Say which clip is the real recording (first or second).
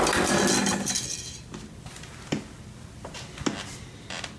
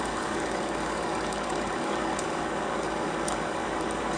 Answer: first